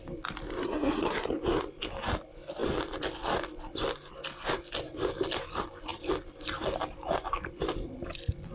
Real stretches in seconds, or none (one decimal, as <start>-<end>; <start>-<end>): 0.0-0.6; 1.3-8.5